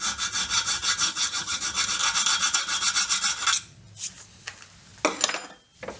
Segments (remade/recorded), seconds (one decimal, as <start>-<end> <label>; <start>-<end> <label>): 0.0-1.0 recorded; 1.0-1.6 remade; 1.6-6.0 recorded